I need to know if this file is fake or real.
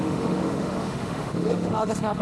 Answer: fake